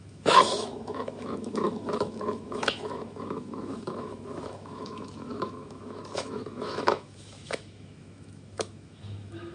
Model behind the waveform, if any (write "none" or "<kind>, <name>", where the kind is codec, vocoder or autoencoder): autoencoder, DAC-VAE